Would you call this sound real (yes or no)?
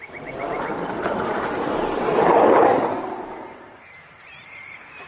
no